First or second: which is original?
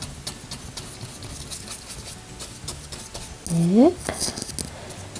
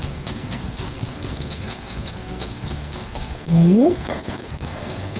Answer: first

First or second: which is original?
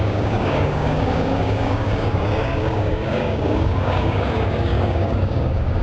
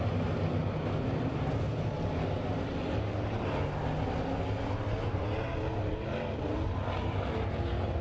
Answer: second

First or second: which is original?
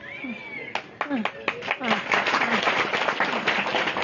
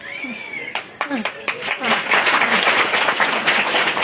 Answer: first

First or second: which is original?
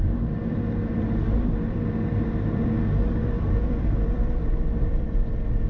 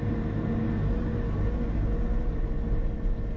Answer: second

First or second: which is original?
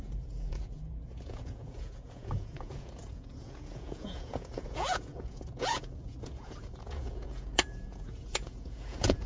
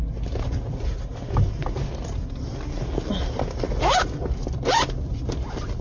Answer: second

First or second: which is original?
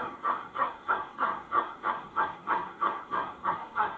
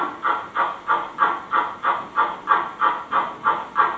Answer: second